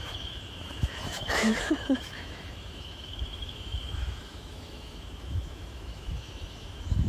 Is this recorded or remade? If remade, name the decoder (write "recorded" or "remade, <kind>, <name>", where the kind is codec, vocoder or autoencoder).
remade, autoencoder, DAC-VAE